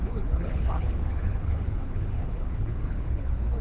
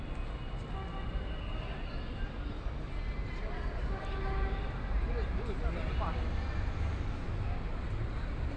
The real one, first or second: second